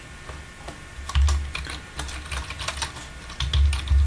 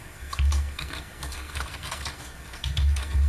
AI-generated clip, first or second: second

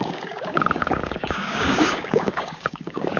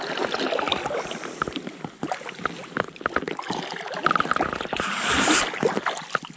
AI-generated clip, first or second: first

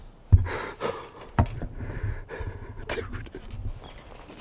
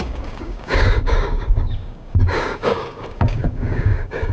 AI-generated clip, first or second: second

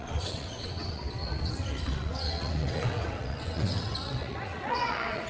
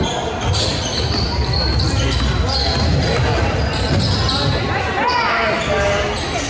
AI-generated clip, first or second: first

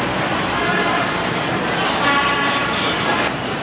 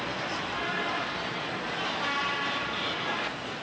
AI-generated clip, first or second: first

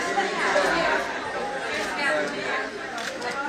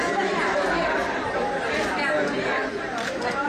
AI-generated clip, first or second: second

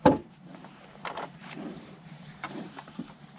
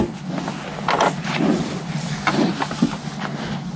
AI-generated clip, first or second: first